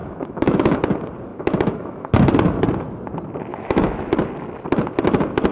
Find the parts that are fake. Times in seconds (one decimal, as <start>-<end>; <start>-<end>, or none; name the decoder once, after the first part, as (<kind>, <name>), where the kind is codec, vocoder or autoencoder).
0.0-0.8 (autoencoder, DAC-VAE); 1.3-2.1; 3.5-4.1